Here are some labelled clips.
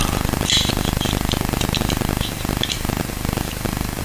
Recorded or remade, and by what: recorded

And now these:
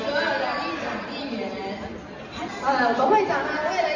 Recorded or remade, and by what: recorded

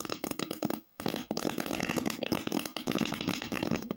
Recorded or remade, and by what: remade, codec, SNAC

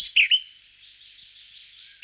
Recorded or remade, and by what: recorded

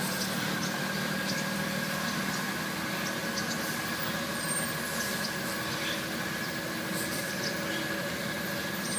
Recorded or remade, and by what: recorded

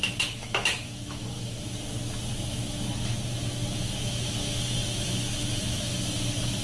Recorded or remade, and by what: remade, autoencoder, DAC-VAE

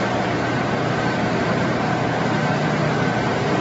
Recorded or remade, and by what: recorded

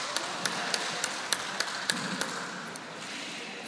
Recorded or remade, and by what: remade, vocoder, BigVGAN v2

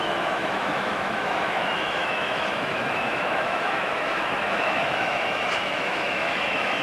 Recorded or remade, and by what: remade, autoencoder, DAC-VAE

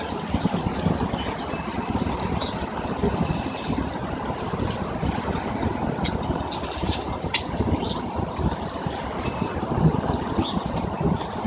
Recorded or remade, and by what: recorded